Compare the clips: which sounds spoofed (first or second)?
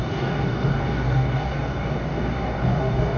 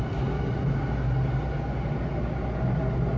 first